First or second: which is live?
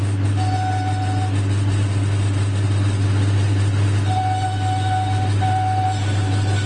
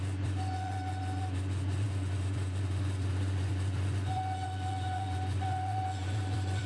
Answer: first